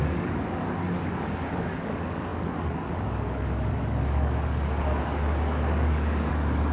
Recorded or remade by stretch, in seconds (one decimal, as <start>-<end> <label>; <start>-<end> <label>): 0.0-6.7 remade